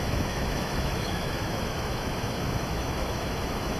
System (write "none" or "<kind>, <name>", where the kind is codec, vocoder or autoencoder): autoencoder, DAC-VAE